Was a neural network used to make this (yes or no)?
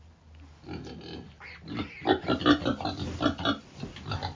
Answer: no